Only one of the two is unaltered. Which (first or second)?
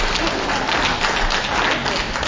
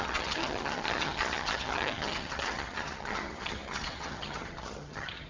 first